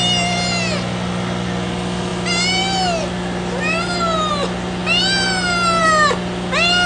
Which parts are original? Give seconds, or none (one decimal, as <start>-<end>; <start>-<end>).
0.0-6.9